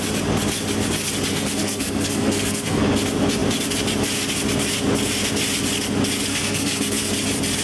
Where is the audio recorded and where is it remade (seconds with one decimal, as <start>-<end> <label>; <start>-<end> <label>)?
0.0-1.3 recorded; 1.3-2.8 remade; 2.8-6.3 recorded; 6.3-7.1 remade; 7.1-7.6 recorded